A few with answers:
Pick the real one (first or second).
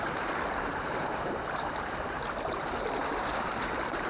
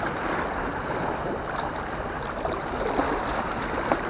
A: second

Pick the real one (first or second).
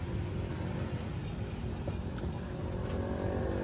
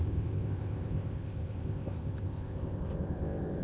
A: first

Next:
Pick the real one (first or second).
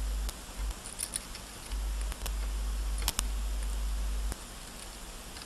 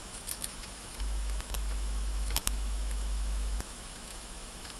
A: first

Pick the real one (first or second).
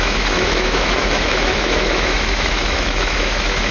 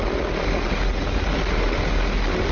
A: second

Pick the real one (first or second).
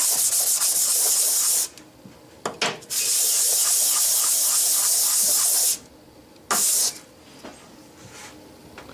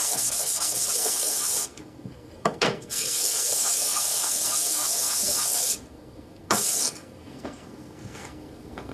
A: first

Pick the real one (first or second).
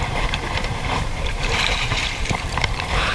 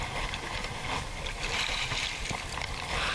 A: second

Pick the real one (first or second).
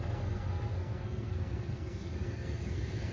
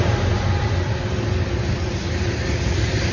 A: second